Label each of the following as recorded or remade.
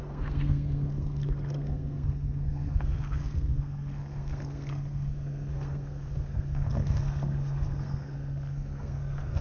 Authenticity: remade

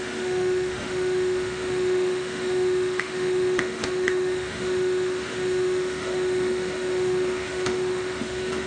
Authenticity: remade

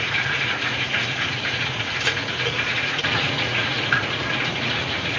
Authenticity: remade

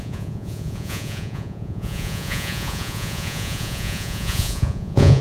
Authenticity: remade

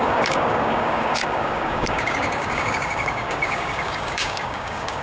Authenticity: remade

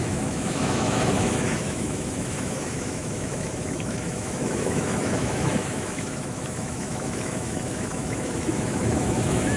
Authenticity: remade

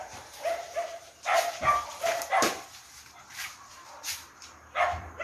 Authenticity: remade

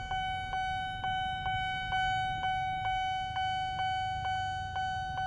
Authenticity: recorded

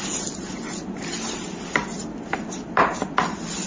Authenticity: recorded